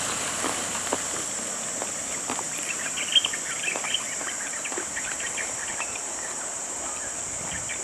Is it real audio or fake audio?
fake